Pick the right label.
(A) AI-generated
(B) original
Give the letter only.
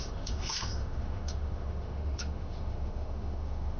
A